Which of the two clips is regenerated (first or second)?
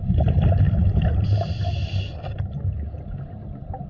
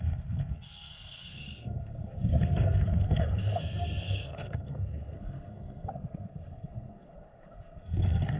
second